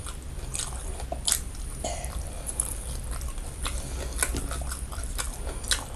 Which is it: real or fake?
real